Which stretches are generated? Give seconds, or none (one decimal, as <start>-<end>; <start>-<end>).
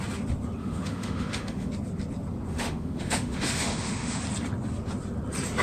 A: 0.6-1.7; 2.5-4.2